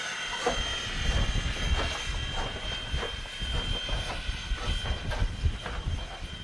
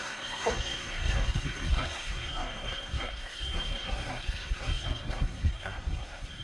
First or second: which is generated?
second